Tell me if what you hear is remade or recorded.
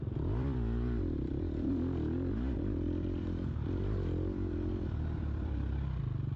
remade